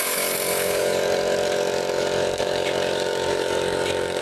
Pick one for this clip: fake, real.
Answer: fake